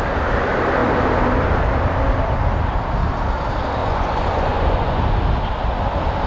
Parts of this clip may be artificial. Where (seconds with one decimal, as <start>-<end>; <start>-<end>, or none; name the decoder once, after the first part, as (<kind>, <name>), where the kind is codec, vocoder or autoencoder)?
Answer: 3.8-5.0 (vocoder, Vocos)